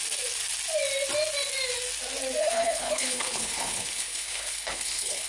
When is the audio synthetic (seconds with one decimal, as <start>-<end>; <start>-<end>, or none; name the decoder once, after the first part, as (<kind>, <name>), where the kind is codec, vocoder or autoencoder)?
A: 2.4-5.3 (codec, HILCodec)